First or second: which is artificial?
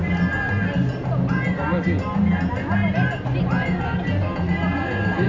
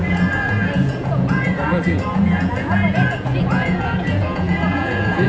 second